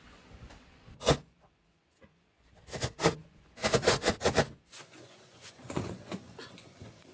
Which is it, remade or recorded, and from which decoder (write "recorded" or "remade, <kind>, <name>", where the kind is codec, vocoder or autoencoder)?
remade, vocoder, Vocos